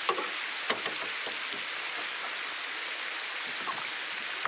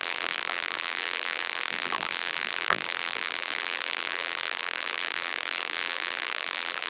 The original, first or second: first